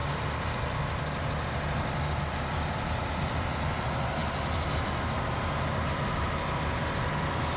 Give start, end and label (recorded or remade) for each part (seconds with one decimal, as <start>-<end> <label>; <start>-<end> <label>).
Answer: 0.0-7.6 recorded

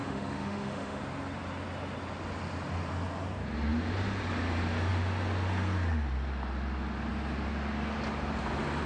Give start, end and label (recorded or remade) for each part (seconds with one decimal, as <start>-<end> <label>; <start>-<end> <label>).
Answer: 0.0-1.0 remade; 1.0-8.9 recorded

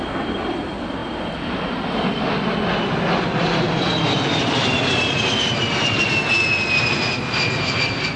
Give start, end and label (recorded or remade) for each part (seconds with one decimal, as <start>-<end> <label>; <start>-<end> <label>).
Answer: 0.0-8.2 recorded